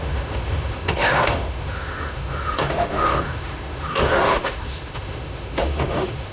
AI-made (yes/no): yes